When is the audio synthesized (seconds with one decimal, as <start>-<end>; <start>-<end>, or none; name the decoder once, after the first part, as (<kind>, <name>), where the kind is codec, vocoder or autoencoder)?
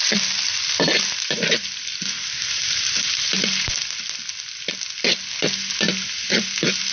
none